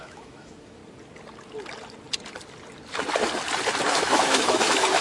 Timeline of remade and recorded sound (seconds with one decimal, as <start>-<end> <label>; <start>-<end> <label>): 0.0-0.8 remade; 0.8-3.8 recorded; 3.8-5.0 remade